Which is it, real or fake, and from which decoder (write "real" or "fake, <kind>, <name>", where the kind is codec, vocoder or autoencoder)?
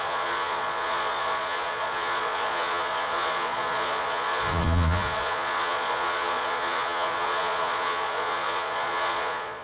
fake, vocoder, Vocos